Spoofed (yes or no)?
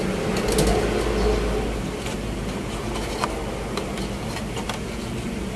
no